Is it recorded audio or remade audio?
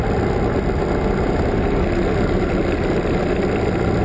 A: recorded